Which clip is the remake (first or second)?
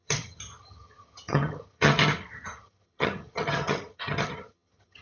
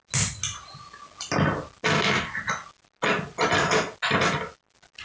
first